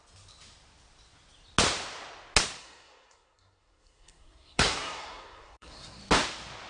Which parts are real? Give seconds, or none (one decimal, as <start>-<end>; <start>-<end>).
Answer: 0.0-2.6; 6.0-6.7